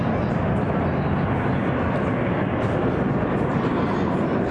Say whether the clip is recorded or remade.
recorded